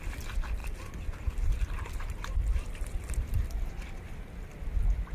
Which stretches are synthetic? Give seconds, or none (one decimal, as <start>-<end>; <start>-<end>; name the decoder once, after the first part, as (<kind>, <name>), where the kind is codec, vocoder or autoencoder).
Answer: 0.6-3.7 (vocoder, BigVGAN v2)